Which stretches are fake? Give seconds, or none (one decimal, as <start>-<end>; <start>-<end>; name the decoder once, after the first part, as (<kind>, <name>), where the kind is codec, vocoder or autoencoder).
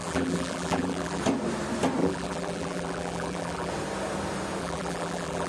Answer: 0.0-1.2 (vocoder, BigVGAN v2); 2.0-3.7; 4.6-5.5